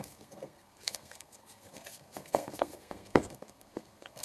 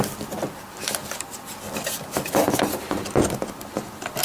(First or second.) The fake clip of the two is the first